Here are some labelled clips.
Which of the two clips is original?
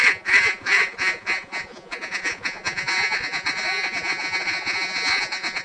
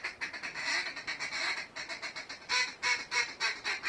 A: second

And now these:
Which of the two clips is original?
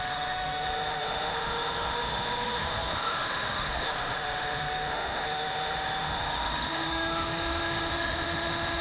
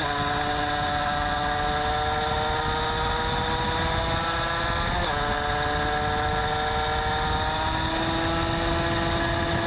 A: second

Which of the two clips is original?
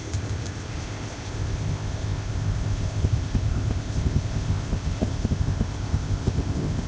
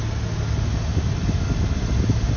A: second